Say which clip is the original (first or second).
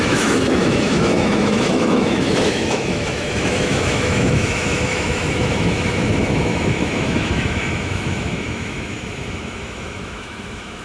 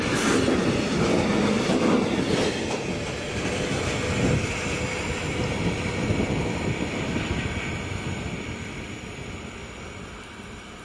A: second